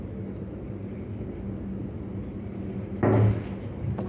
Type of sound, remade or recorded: recorded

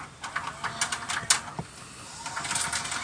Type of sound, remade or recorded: recorded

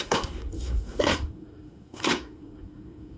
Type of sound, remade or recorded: remade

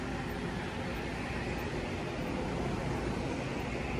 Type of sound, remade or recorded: recorded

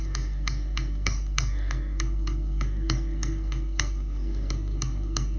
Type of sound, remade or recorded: remade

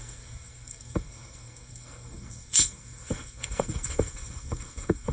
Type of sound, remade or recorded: remade